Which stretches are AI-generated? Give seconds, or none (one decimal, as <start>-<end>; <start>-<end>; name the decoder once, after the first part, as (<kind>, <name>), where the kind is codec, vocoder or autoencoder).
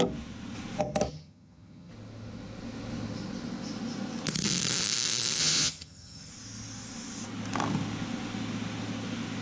1.1-1.9 (vocoder, HiFi-GAN); 5.4-6.3